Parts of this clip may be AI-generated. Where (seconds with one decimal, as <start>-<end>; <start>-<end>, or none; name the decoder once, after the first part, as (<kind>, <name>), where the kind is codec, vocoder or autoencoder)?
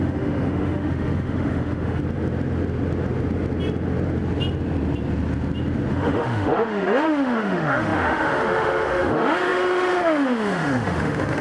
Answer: 0.0-2.0 (autoencoder, DAC-VAE); 5.9-11.4